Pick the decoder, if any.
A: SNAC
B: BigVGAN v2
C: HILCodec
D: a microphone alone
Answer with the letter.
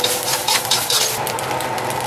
D